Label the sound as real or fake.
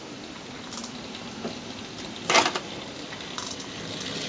real